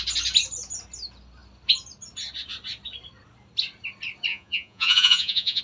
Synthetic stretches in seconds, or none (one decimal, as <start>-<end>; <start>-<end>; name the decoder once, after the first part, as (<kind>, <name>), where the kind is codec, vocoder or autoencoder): 4.3-5.6 (vocoder, Vocos)

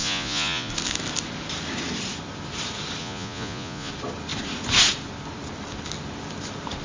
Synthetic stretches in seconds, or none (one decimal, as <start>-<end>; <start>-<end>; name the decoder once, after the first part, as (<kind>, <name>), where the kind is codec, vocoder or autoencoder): 0.0-0.7 (vocoder, Vocos); 3.0-3.9